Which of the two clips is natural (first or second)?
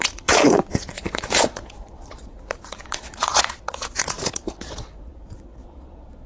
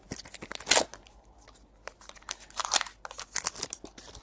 second